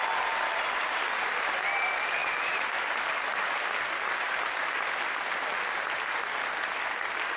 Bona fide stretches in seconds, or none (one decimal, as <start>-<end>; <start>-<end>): 0.0-7.4